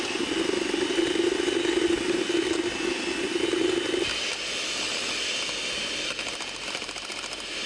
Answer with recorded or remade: recorded